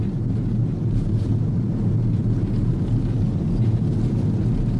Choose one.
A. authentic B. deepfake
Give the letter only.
A